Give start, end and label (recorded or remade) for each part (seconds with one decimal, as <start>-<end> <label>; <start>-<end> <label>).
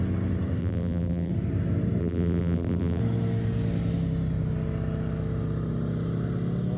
0.0-0.6 recorded; 0.6-1.3 remade; 1.3-2.0 recorded; 2.0-3.0 remade; 3.0-6.8 recorded